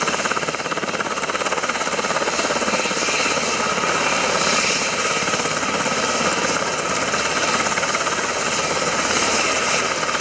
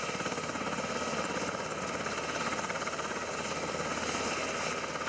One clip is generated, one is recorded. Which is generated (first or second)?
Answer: first